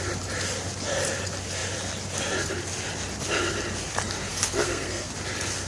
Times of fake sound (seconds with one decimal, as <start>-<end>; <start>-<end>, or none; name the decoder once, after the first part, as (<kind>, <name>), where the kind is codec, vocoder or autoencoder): 4.3-5.1 (codec, SNAC)